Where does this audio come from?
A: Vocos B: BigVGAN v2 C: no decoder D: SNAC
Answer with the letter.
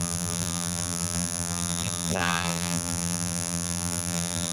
B